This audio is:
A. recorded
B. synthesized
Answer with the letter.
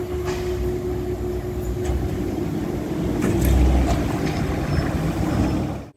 A